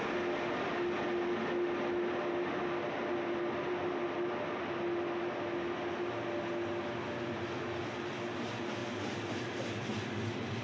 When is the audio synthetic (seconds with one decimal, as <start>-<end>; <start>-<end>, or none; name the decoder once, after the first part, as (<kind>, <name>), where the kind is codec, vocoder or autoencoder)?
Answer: none

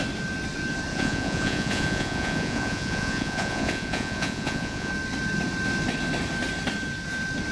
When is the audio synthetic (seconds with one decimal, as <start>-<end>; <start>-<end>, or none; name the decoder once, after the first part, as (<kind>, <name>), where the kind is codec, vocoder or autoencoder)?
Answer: 0.9-4.9 (vocoder, Vocos)

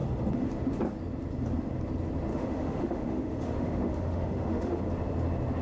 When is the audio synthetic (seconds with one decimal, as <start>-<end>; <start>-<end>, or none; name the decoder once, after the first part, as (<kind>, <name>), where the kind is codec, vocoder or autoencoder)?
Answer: 2.3-4.8 (autoencoder, DAC-VAE)

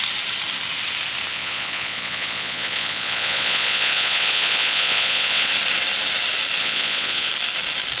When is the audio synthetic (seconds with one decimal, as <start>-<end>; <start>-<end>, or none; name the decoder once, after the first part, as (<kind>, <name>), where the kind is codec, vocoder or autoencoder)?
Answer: 1.3-5.5 (vocoder, Vocos); 6.6-7.3

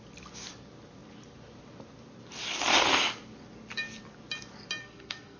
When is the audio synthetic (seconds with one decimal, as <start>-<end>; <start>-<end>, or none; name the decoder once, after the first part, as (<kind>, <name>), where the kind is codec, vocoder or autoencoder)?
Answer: 4.8-5.4 (codec, SNAC)

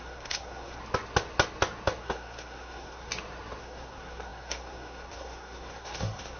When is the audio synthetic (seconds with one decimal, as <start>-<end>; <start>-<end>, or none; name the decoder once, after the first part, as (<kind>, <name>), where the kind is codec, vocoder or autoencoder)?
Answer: 0.0-0.8 (codec, SNAC); 2.0-3.1; 3.6-6.4

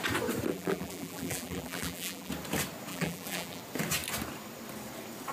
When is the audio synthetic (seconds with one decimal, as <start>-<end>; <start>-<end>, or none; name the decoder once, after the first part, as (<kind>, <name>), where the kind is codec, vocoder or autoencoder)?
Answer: 0.5-2.3 (vocoder, BigVGAN v2); 2.9-3.6